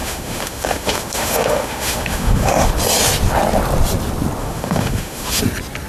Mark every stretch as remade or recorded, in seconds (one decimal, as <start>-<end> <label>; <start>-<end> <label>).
0.0-2.7 remade; 2.7-4.4 recorded; 4.4-5.4 remade; 5.4-5.9 recorded